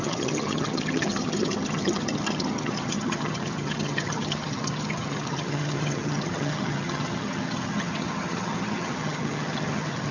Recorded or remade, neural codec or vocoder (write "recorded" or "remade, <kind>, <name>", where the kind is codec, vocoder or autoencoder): remade, vocoder, HiFi-GAN